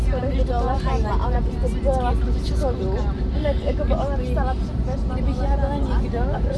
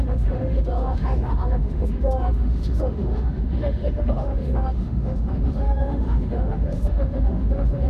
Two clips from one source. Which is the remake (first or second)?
second